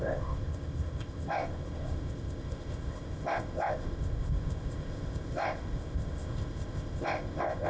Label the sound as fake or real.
fake